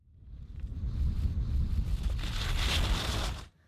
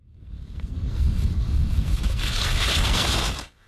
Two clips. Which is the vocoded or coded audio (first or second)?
second